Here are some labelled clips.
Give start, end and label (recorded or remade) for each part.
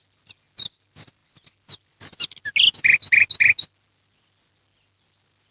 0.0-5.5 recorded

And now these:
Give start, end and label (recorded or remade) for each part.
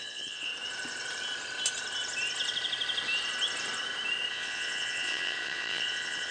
0.0-0.5 remade; 0.5-4.3 recorded; 4.3-6.3 remade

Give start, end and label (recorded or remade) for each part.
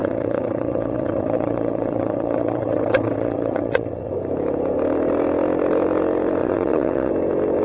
0.0-4.1 remade; 4.1-6.4 recorded; 6.4-7.1 remade; 7.1-7.6 recorded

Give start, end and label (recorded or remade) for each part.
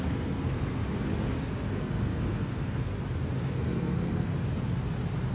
0.0-0.8 remade; 0.8-1.4 recorded; 1.4-2.9 remade; 2.9-3.4 recorded; 3.4-4.3 remade; 4.3-5.3 recorded